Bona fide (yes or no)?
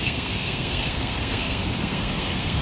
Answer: no